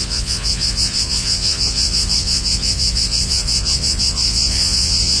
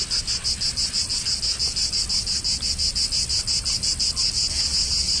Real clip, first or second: second